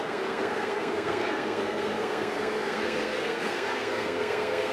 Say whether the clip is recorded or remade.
remade